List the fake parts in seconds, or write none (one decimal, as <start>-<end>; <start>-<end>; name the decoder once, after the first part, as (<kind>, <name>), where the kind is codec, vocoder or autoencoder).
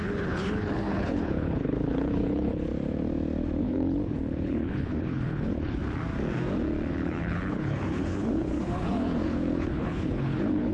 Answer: 0.0-2.7 (codec, HILCodec); 3.6-5.8; 6.9-10.7